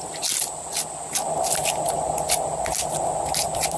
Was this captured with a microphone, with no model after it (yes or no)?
yes